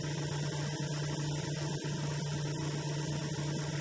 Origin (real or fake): real